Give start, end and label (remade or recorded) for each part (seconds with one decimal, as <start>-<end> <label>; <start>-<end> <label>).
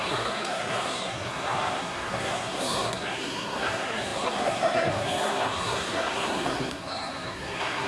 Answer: 0.0-7.9 remade